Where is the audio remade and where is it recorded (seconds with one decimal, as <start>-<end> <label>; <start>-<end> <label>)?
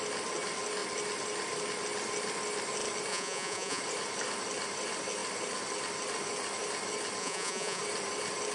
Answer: 0.0-3.1 recorded; 3.1-3.8 remade; 3.8-7.2 recorded; 7.2-7.8 remade; 7.8-8.5 recorded